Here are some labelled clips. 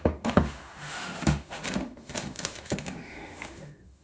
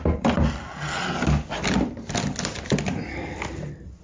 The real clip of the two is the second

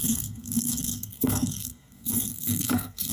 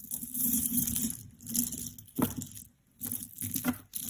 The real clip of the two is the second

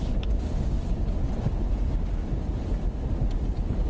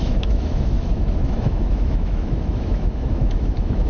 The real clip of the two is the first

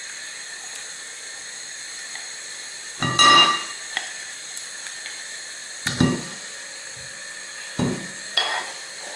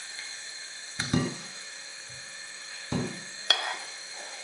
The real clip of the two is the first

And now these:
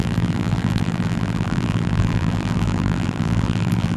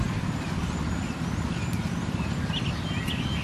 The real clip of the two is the second